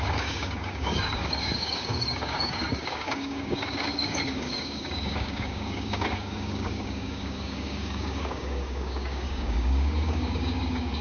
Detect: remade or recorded remade